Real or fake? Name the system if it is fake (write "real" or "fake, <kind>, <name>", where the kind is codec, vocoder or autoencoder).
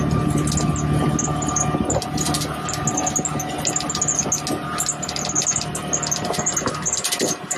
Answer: real